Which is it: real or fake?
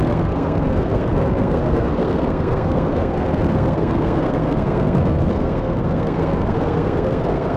fake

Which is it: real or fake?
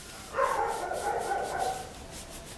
real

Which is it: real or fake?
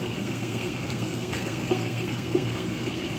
fake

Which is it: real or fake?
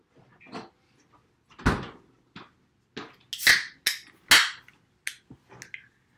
real